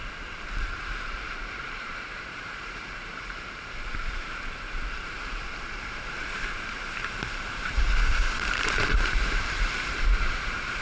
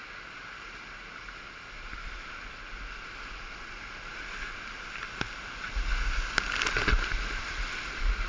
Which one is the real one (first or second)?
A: second